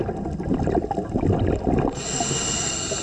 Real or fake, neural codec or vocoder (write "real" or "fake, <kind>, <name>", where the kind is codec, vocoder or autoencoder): real